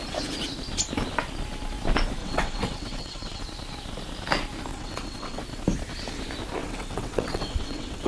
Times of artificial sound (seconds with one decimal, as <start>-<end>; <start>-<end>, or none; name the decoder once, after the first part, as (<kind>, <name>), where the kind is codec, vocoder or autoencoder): 2.2-3.4 (vocoder, WaveNeXt); 4.7-5.4; 6.6-8.1